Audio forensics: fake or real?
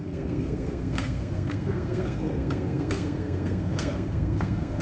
fake